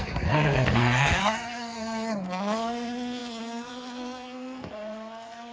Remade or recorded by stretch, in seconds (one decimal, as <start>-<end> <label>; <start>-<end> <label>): 0.0-5.5 remade